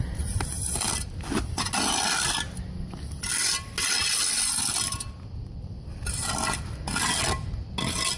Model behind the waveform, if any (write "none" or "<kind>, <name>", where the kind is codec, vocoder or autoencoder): none